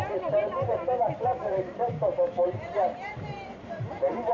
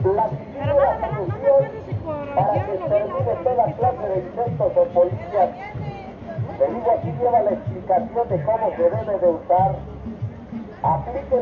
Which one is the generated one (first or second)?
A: first